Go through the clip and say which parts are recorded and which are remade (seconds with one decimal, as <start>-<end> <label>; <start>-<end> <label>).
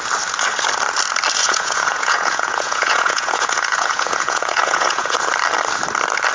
0.0-1.4 recorded; 1.4-5.2 remade; 5.2-6.3 recorded